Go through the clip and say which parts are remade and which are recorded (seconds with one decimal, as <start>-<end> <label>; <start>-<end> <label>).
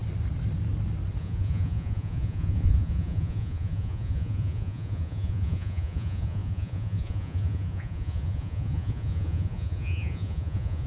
0.0-1.2 recorded; 1.2-10.9 remade